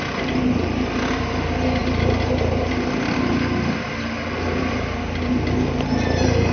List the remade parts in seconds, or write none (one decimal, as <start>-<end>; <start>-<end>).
none